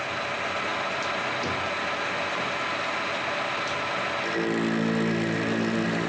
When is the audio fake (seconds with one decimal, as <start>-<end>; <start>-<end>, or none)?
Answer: none